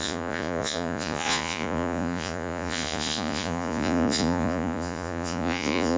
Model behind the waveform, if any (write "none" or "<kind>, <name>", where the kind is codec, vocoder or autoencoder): vocoder, Vocos